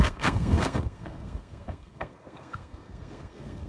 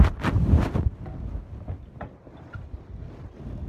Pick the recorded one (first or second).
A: second